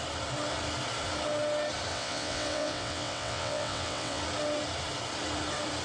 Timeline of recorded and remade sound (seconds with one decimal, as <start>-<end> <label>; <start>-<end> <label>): 0.0-1.9 recorded; 1.9-4.2 remade; 4.2-5.8 recorded